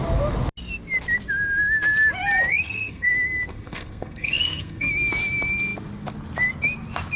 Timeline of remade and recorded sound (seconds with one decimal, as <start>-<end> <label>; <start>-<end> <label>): 0.0-2.5 recorded; 2.5-3.1 remade; 3.1-3.5 recorded; 3.5-4.9 remade; 4.9-7.2 recorded